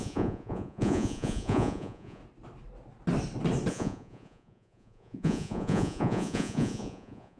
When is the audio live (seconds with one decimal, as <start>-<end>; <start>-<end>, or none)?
2.2-3.7